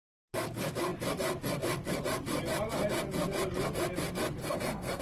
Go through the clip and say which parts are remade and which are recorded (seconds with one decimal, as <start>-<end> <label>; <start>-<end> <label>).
0.0-4.4 recorded; 4.4-5.0 remade